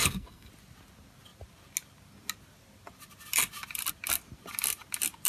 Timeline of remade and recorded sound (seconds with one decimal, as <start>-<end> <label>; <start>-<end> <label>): 0.0-0.5 remade; 0.5-5.3 recorded